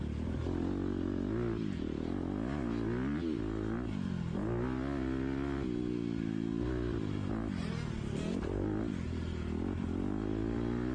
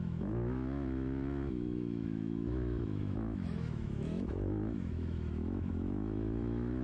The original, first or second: first